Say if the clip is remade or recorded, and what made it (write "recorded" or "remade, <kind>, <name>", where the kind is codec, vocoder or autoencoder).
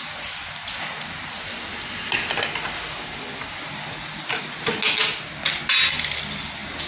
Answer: recorded